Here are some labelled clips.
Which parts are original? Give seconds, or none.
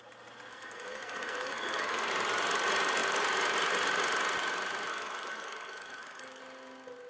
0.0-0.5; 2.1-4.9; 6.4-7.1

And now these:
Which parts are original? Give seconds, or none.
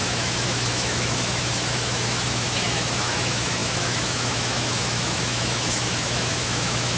none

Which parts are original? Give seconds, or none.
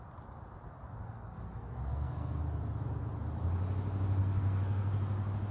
0.0-1.0; 2.4-4.2; 4.9-5.5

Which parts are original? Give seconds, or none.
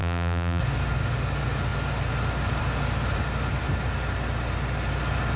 0.6-5.4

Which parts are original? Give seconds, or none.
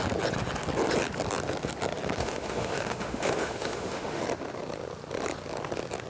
0.0-2.2; 4.2-6.1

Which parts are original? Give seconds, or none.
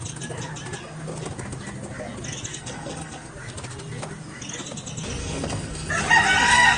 0.0-2.5; 3.3-5.2; 5.9-6.8